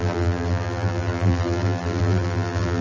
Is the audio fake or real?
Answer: fake